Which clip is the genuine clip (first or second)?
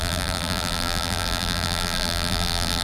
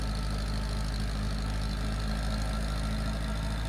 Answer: second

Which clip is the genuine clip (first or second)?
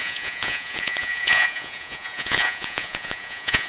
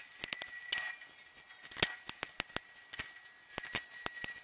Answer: second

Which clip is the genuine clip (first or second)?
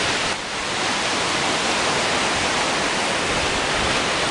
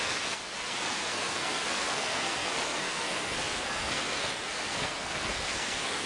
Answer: first